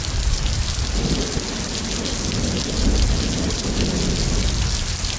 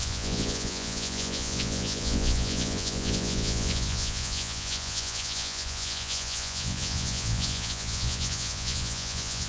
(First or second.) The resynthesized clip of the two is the second